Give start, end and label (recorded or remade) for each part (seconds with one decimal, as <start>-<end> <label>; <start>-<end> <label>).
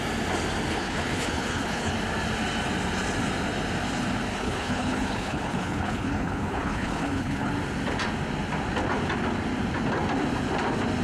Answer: 0.0-0.7 recorded; 0.7-1.9 remade; 1.9-4.3 recorded; 4.3-7.5 remade; 7.5-11.0 recorded